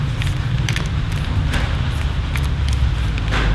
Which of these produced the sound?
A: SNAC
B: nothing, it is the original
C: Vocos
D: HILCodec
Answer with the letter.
B